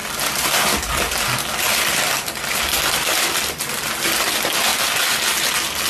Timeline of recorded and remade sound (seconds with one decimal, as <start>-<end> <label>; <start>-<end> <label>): 0.0-0.8 remade; 0.8-3.1 recorded; 3.1-3.8 remade; 3.8-5.9 recorded

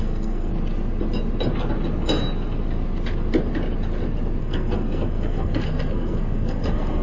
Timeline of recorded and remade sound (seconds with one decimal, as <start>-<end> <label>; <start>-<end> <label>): 0.0-0.5 remade; 0.5-4.4 recorded; 4.4-7.0 remade

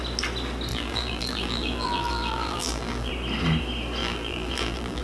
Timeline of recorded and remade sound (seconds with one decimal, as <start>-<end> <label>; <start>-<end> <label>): 0.0-0.7 recorded; 0.7-3.1 remade; 3.1-4.0 recorded; 4.0-5.0 remade

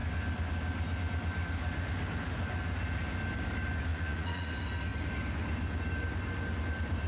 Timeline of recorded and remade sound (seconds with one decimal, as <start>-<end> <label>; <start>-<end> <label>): 0.0-3.9 recorded; 3.9-4.5 remade; 4.5-7.1 recorded

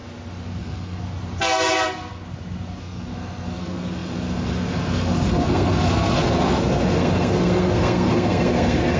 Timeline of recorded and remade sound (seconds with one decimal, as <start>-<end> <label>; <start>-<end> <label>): 0.0-0.6 recorded; 0.6-1.0 remade; 1.0-2.8 recorded; 2.8-9.0 remade

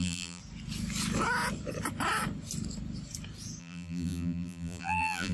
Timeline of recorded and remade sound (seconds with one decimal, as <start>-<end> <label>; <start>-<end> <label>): 0.0-0.4 remade; 0.4-3.6 recorded; 3.6-5.3 remade

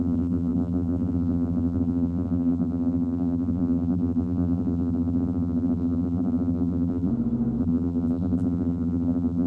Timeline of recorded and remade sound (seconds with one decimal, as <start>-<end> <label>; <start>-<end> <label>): 0.0-7.1 remade; 7.1-7.6 recorded; 7.6-9.5 remade

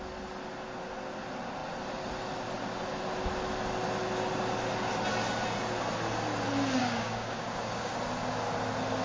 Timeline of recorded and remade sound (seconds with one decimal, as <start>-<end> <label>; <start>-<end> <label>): 0.0-6.8 recorded; 6.8-8.0 remade; 8.0-9.0 recorded